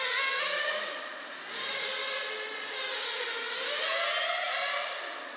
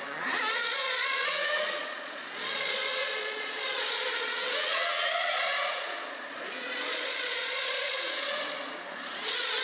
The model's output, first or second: second